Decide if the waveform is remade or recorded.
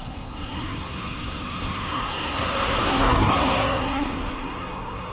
remade